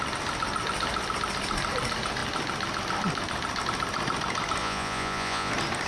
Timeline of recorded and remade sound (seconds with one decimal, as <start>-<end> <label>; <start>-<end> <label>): 0.0-4.6 recorded; 4.6-5.5 remade; 5.5-5.9 recorded